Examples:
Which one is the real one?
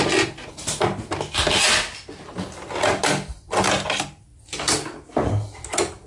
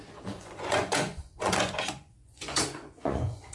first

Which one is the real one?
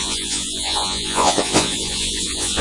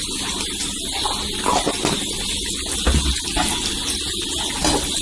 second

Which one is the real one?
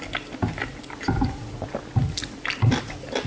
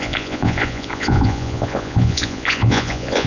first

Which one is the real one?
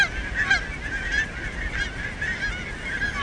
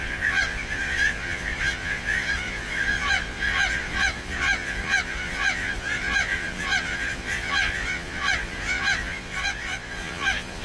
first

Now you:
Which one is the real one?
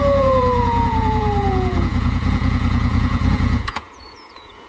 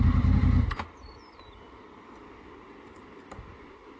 second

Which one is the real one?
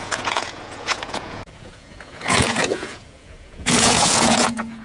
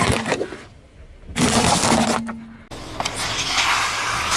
second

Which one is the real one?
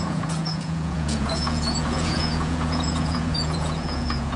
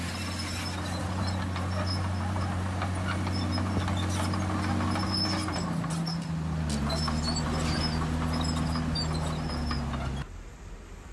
second